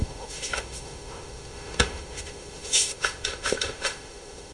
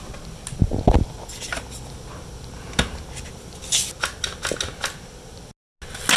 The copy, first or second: first